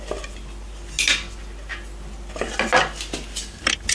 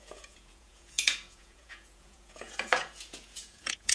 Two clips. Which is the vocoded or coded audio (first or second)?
second